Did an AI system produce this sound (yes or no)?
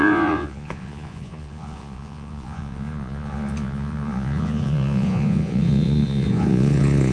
yes